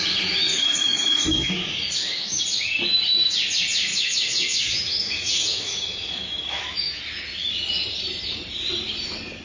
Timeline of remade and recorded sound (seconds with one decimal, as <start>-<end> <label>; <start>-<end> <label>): 0.0-0.5 recorded; 0.5-2.4 remade; 2.4-3.9 recorded; 3.9-7.0 remade; 7.0-9.4 recorded